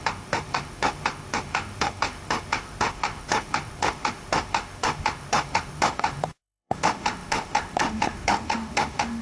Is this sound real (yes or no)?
no